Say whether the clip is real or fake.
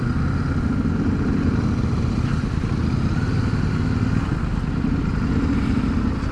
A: real